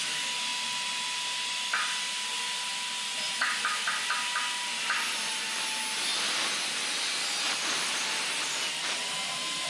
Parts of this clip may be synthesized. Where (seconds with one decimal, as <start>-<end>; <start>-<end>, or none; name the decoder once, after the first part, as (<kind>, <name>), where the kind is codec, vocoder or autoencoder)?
none